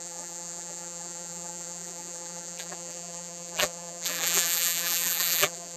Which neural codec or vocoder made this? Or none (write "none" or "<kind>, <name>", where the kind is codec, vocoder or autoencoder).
vocoder, BigVGAN v2